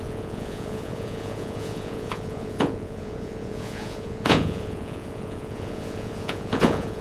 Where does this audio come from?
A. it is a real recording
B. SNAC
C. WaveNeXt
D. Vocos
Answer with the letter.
D